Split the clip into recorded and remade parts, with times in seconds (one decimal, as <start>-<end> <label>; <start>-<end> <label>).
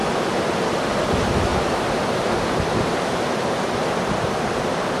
0.0-1.5 recorded; 1.5-4.3 remade; 4.3-5.0 recorded